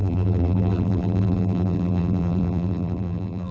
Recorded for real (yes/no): no